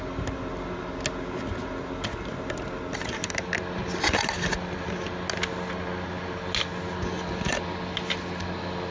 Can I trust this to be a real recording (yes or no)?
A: yes